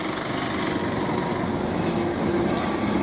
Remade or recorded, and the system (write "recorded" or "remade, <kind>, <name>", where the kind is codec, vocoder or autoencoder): recorded